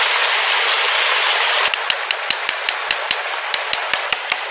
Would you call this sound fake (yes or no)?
no